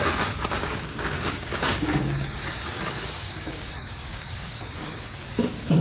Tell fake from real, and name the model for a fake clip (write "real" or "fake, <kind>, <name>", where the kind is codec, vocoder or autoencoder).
fake, codec, DAC